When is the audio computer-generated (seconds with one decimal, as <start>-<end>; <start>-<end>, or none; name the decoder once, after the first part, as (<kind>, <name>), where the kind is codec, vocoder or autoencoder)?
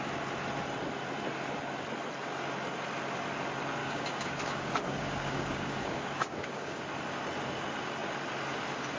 3.8-6.8 (codec, DAC)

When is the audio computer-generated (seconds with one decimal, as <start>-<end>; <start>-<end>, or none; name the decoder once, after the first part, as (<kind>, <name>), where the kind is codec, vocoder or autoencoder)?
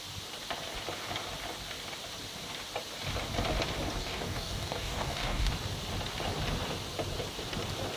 4.0-5.5 (codec, DAC)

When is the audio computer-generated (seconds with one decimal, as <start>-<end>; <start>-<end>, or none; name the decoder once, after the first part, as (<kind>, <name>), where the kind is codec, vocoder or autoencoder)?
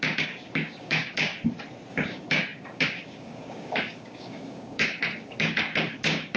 0.0-1.3 (codec, DAC); 1.9-6.4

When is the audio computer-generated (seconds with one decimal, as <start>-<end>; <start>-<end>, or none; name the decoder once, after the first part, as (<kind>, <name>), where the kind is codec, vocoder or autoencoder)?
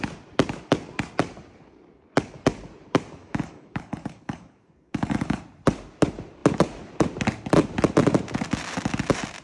3.2-5.4 (codec, DAC)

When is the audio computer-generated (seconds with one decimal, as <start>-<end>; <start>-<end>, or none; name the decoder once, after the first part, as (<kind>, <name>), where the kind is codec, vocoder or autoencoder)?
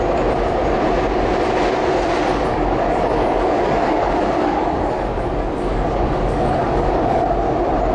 2.5-7.2 (codec, DAC)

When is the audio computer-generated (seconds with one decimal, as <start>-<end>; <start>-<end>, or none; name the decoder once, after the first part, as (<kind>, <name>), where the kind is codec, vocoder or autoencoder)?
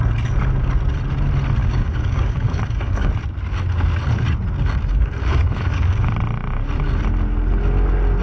1.6-3.1 (codec, DAC); 4.9-6.1